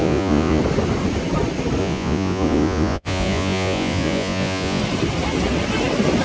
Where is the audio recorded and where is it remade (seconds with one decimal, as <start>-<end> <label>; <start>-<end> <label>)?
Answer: 0.0-0.6 remade; 0.6-1.8 recorded; 1.8-4.8 remade; 4.8-6.2 recorded